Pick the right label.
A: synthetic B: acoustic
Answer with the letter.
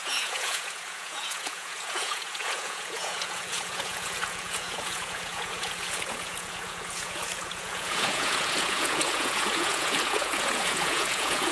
A